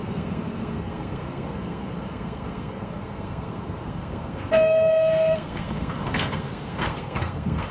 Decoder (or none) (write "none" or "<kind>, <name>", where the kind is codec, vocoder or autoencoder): codec, SNAC